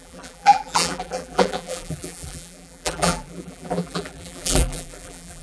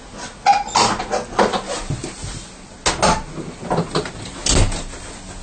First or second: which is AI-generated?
first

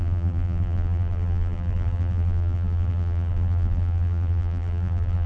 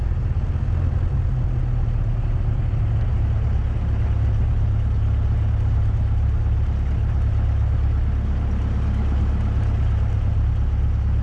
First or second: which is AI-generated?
first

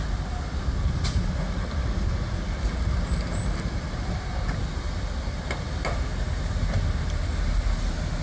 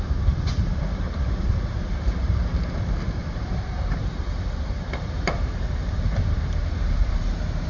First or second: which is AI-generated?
second